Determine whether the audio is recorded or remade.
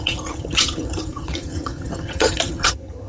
remade